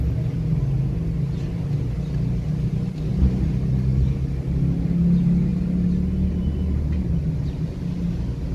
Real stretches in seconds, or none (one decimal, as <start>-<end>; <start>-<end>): 0.0-8.5